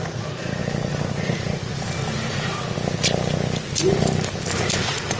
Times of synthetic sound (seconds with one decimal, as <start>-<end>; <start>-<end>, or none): 0.0-0.6; 1.2-1.7; 4.8-5.2